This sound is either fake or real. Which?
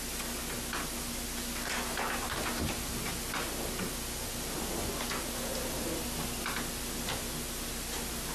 real